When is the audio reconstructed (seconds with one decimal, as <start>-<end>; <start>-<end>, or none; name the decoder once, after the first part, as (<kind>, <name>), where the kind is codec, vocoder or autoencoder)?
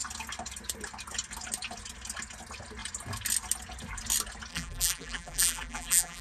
4.5-6.2 (vocoder, BigVGAN v2)